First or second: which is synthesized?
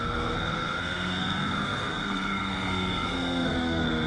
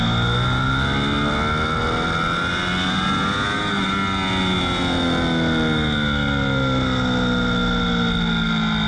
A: first